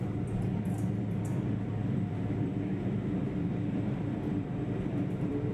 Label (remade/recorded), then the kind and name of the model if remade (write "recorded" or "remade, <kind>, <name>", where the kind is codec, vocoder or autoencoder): remade, vocoder, BigVGAN v2